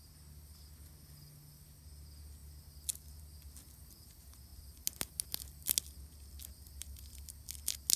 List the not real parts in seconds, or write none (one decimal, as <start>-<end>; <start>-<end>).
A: none